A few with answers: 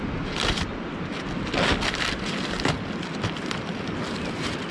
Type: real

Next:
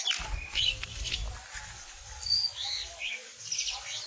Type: real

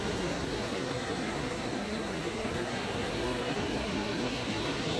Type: fake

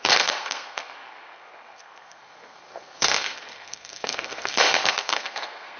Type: fake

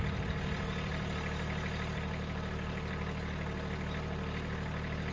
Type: real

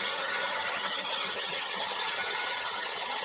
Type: fake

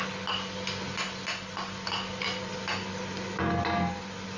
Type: real